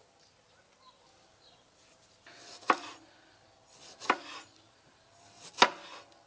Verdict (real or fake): real